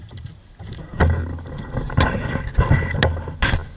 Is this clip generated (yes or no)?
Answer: no